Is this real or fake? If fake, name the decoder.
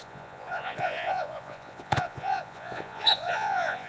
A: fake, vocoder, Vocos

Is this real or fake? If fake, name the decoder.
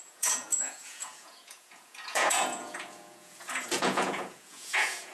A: fake, vocoder, Vocos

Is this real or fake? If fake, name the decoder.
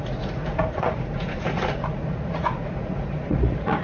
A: fake, vocoder, Vocos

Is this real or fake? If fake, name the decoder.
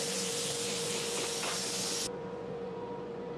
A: fake, vocoder, Vocos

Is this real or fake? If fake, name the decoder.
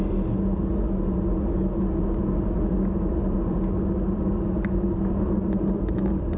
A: real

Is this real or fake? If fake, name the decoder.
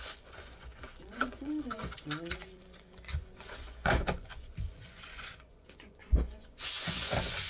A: fake, vocoder, Vocos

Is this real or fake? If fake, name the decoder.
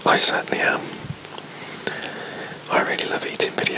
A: real